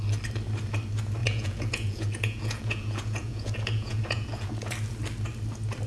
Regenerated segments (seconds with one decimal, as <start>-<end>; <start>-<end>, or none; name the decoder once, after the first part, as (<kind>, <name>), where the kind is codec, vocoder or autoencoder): 1.2-4.7 (vocoder, Vocos)